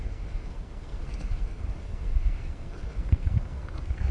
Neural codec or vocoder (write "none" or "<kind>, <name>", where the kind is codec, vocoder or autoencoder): codec, SNAC